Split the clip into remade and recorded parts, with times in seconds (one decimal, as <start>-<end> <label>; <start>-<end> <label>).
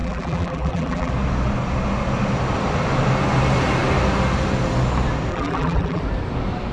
0.0-1.1 remade; 1.1-5.3 recorded; 5.3-6.0 remade; 6.0-6.7 recorded